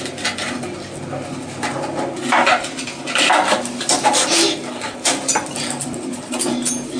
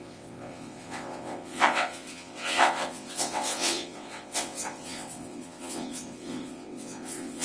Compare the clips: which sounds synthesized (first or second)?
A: second